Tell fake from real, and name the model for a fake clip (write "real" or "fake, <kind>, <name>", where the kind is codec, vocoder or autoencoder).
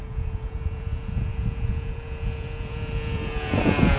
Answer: fake, vocoder, Vocos